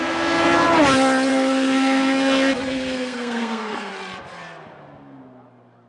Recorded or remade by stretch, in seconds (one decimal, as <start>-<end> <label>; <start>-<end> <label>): 0.0-1.3 recorded; 1.3-3.9 remade; 3.9-5.9 recorded